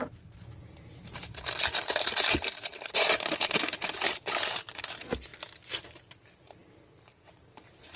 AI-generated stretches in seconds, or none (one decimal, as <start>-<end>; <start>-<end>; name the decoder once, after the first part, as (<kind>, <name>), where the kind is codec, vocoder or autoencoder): 0.0-1.2 (vocoder, BigVGAN v2); 1.8-5.3; 6.2-8.0